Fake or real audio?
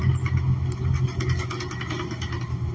real